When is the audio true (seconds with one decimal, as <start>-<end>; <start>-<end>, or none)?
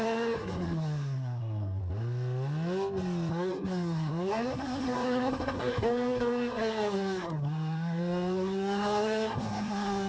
1.8-3.3